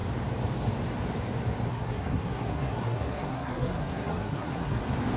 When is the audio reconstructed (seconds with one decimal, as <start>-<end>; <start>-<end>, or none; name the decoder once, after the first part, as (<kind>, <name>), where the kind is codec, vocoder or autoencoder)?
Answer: 1.7-4.8 (codec, SNAC)